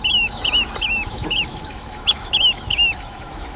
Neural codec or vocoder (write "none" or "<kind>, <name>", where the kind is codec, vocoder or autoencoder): autoencoder, DAC-VAE